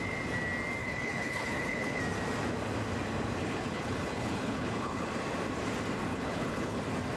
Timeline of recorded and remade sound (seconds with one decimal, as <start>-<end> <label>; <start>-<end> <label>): 0.0-0.8 recorded; 0.8-2.0 remade; 2.0-3.4 recorded; 3.4-5.1 remade; 5.1-6.1 recorded; 6.1-6.8 remade; 6.8-7.2 recorded